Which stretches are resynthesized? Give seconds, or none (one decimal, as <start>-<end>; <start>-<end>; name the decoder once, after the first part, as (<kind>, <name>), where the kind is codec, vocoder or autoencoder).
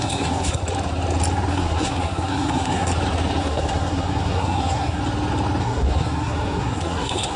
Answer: 0.0-0.6 (codec, SNAC); 1.5-2.9; 3.4-5.0; 5.6-7.4